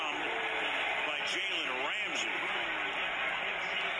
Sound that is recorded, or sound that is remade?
recorded